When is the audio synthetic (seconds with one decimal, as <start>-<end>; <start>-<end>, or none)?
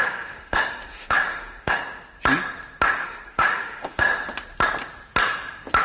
0.0-1.8; 3.0-4.1